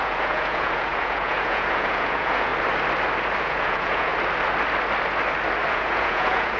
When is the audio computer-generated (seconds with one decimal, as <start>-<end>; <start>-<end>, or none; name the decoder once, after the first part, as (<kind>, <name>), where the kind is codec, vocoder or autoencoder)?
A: 0.0-2.5 (vocoder, Vocos); 3.4-4.1; 5.7-6.6